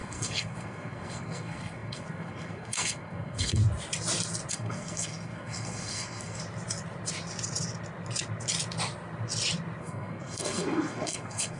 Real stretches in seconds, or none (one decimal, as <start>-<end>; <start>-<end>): 3.6-4.5; 6.4-9.8